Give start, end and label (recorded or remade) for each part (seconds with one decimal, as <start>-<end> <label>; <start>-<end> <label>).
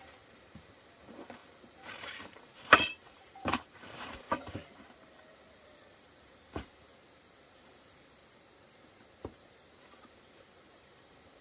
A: 0.0-6.9 remade; 6.9-7.5 recorded; 7.5-8.2 remade; 8.2-9.8 recorded; 9.8-11.4 remade